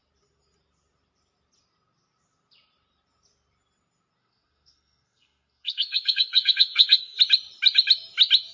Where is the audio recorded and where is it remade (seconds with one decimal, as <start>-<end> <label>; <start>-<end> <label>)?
0.0-4.2 recorded; 4.2-7.2 remade; 7.2-8.5 recorded